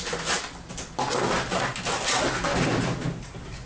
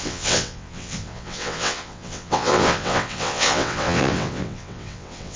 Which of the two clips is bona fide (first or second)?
first